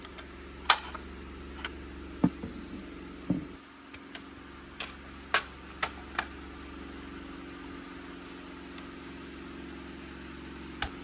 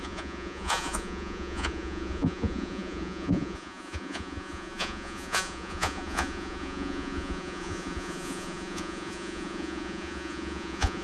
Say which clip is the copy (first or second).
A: second